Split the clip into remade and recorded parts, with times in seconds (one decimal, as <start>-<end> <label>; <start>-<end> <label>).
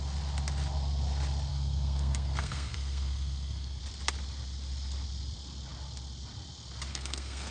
0.0-1.5 recorded; 1.5-3.8 remade; 3.8-6.9 recorded; 6.9-7.5 remade